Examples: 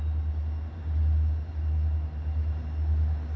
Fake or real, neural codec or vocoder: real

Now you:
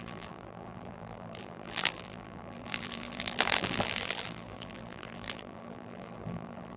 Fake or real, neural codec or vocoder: fake, vocoder, BigVGAN v2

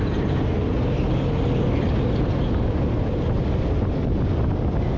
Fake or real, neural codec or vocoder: real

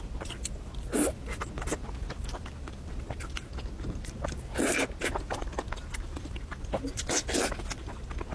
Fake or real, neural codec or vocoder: real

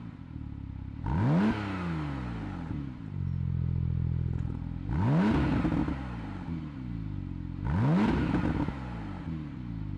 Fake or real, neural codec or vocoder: real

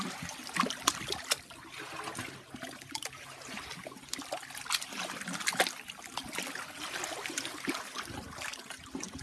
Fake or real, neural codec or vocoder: real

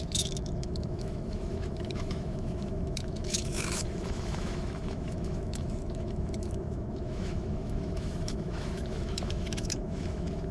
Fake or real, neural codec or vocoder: fake, autoencoder, DAC-VAE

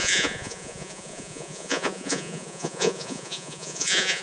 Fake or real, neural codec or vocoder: fake, vocoder, Vocos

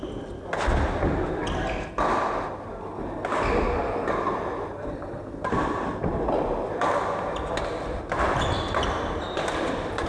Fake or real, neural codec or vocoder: real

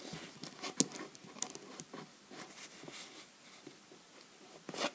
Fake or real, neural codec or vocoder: real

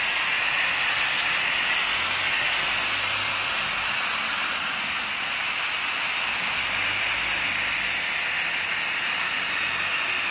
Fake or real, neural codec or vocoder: real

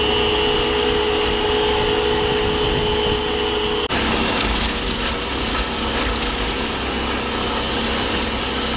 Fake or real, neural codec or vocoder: real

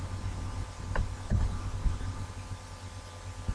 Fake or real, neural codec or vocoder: real